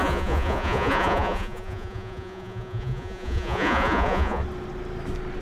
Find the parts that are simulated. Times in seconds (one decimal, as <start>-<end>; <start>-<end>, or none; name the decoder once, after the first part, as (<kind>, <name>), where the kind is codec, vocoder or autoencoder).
0.0-4.4 (vocoder, Vocos)